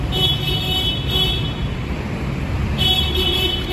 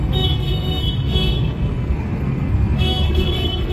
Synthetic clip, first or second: second